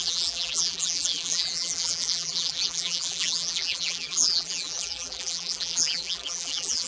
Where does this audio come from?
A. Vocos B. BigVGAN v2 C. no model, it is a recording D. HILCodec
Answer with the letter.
B